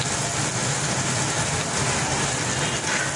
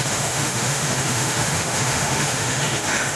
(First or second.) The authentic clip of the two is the first